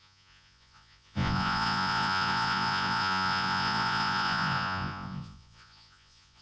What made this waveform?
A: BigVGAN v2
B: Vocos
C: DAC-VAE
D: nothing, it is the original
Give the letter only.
B